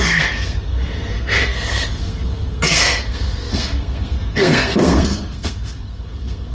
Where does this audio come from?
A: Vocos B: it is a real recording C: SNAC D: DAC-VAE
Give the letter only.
C